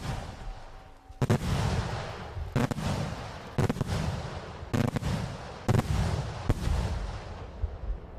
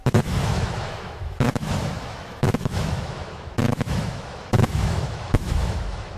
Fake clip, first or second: second